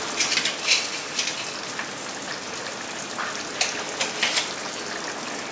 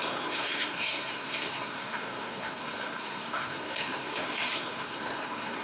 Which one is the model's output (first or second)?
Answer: second